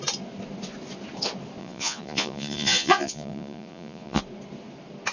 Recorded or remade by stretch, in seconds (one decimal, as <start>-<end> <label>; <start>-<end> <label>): 0.0-1.6 recorded; 1.6-4.2 remade; 4.2-5.1 recorded